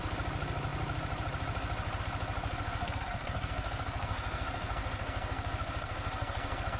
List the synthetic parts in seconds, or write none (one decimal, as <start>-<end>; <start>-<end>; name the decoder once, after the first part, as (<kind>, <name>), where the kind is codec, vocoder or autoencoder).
2.4-6.8 (codec, SNAC)